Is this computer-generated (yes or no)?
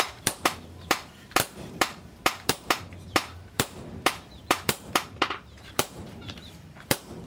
yes